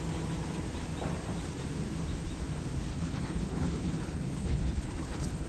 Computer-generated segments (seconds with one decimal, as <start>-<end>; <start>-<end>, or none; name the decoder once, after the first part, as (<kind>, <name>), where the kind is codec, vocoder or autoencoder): 2.9-5.5 (codec, HILCodec)